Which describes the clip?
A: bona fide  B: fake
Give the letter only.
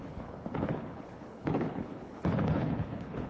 B